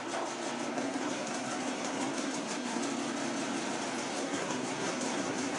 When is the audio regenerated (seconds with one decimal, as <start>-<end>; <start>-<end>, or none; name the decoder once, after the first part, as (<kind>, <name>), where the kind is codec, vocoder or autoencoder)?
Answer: 0.7-2.8 (codec, SNAC); 4.1-5.6